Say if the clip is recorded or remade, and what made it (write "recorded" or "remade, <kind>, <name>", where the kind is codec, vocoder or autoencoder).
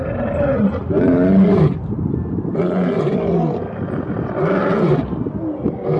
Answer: recorded